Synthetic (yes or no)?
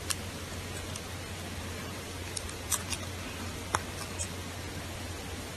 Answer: no